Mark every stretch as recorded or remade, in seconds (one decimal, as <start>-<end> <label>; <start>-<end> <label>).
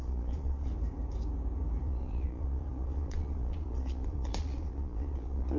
0.0-0.7 remade; 0.7-1.8 recorded; 1.8-5.6 remade